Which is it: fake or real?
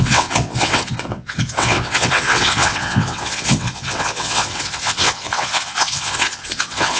fake